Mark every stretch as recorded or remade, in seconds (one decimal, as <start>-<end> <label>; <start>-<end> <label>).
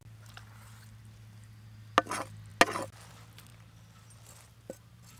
0.0-5.2 recorded